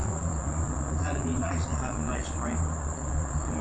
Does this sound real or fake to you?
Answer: fake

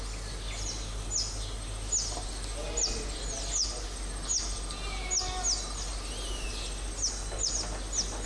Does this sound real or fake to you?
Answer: real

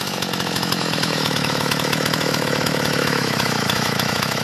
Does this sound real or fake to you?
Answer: fake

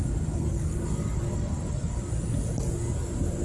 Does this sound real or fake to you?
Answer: real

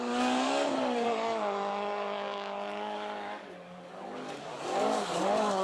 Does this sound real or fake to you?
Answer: fake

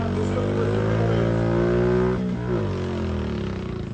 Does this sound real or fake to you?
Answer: real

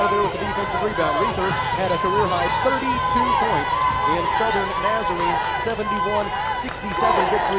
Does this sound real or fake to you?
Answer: real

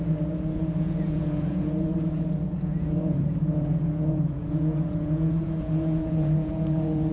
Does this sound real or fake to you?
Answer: fake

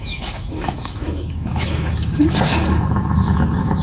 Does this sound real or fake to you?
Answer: fake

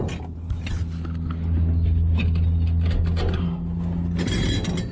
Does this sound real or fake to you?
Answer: real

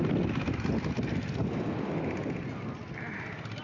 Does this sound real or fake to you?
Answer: real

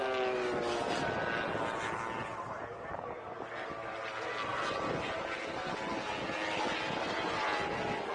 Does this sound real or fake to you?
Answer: real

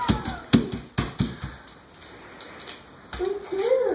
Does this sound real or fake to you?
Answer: real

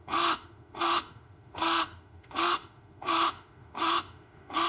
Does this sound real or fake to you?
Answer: fake